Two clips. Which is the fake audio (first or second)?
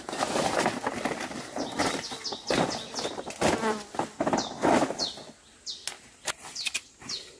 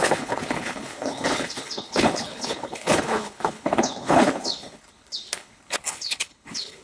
second